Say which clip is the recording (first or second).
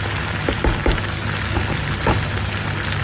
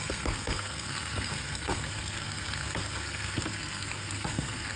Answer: first